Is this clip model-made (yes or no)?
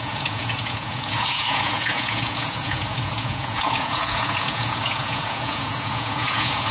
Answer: yes